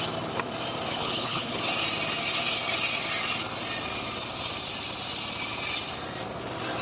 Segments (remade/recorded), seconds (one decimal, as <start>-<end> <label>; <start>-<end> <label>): 0.0-0.9 recorded; 0.9-1.6 remade; 1.6-6.8 recorded